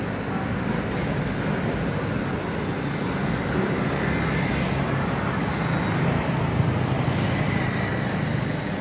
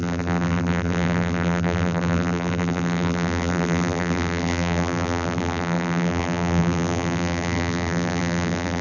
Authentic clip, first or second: first